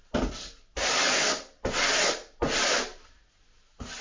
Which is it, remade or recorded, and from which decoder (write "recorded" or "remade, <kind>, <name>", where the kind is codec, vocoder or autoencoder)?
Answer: recorded